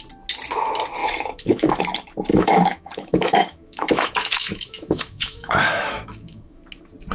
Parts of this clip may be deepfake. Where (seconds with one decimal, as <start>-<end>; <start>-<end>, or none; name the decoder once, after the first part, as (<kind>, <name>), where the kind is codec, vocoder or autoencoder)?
1.0-1.8 (autoencoder, DAC-VAE); 2.3-6.6